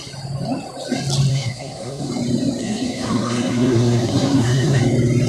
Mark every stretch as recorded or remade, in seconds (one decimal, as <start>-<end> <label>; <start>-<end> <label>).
0.0-1.3 recorded; 1.3-2.1 remade; 2.1-2.6 recorded; 2.6-4.8 remade; 4.8-5.3 recorded